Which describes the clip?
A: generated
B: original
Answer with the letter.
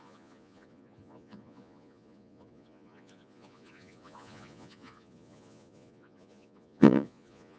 A